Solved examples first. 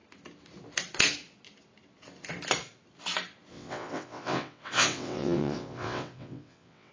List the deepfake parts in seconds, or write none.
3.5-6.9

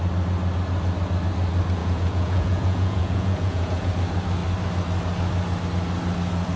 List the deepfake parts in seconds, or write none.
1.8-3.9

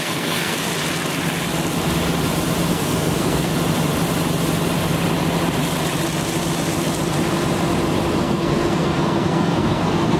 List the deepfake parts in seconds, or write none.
0.0-0.7; 2.7-3.5; 8.2-10.2